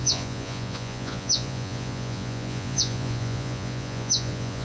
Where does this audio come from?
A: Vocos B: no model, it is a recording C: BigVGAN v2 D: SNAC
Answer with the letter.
A